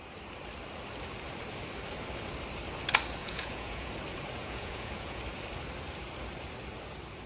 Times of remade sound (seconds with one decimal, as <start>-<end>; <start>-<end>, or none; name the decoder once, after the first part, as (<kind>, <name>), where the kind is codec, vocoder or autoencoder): 3.2-3.9 (vocoder, Vocos); 4.4-5.2